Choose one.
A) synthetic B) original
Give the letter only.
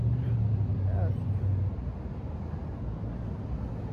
B